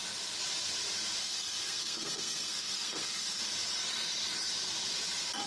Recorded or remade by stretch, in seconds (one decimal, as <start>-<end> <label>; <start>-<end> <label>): 0.0-1.2 recorded; 1.2-3.4 remade; 3.4-5.5 recorded